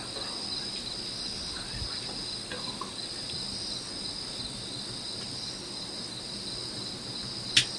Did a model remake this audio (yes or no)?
no